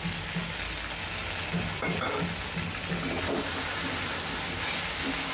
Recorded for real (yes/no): yes